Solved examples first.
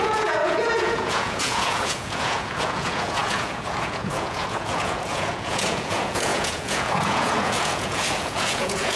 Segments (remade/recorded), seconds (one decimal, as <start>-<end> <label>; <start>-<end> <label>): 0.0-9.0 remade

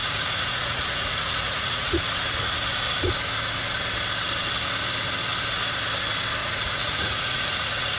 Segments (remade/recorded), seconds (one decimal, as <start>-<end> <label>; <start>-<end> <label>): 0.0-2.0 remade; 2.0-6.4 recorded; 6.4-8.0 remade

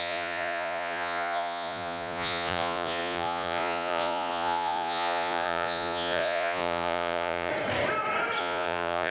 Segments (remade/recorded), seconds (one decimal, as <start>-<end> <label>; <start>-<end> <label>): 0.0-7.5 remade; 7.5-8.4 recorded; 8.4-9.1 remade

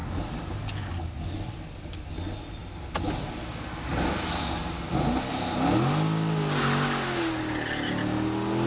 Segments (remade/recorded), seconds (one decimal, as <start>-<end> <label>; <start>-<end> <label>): 0.0-8.7 recorded